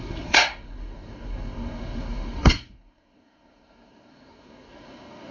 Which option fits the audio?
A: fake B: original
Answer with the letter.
A